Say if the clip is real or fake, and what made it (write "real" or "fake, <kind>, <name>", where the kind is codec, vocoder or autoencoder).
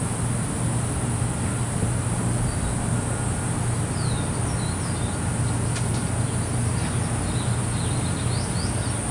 real